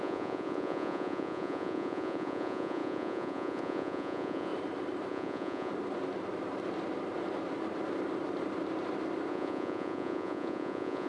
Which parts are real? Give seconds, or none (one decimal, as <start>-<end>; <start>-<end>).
4.5-5.1; 5.7-9.3